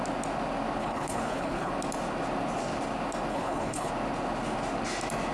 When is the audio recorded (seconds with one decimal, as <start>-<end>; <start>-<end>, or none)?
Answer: 0.0-0.8; 1.7-3.3; 3.9-5.3